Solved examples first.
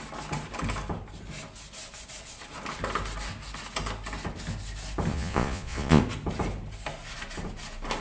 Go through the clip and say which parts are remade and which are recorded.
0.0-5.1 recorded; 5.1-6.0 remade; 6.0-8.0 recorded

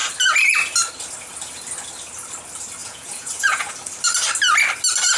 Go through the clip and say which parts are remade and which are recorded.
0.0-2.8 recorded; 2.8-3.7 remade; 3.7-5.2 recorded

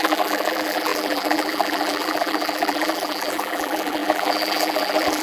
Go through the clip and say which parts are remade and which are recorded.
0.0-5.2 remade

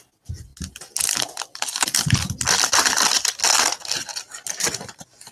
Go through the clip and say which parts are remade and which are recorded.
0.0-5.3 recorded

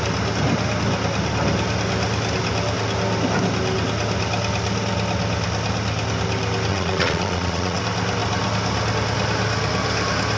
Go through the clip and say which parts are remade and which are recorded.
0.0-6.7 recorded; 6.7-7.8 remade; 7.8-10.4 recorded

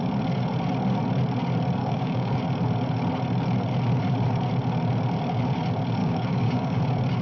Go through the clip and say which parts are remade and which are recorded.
0.0-1.8 recorded; 1.8-2.4 remade; 2.4-6.0 recorded; 6.0-6.8 remade; 6.8-7.2 recorded

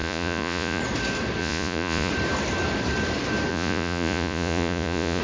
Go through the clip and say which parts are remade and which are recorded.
0.0-0.8 remade; 0.8-1.4 recorded; 1.4-2.1 remade; 2.1-3.5 recorded; 3.5-5.2 remade